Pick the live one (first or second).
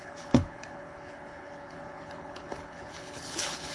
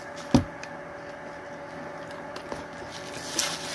second